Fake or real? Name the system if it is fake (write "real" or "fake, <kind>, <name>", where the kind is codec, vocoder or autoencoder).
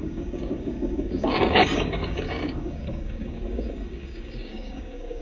fake, codec, DAC